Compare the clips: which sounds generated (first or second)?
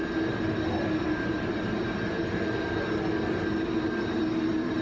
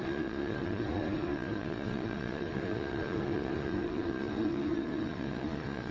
second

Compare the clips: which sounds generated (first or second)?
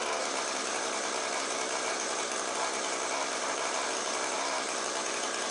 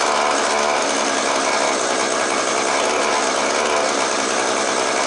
first